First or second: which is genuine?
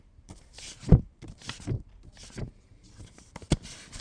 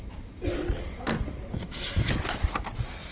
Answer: second